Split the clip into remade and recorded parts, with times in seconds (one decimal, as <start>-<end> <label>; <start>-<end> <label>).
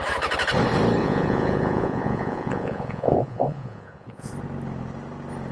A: 0.0-1.0 recorded; 1.0-4.3 remade; 4.3-5.5 recorded